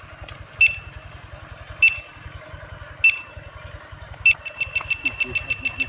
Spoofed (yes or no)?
no